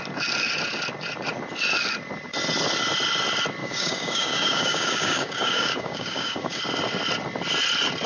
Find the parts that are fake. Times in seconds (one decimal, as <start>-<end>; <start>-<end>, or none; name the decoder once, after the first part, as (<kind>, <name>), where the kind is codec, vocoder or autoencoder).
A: 3.6-6.6 (codec, DAC)